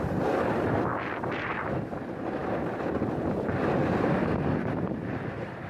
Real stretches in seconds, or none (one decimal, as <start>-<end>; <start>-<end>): 2.4-3.8